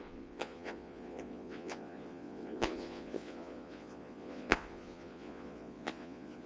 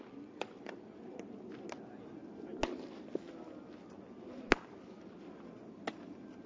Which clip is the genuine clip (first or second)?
second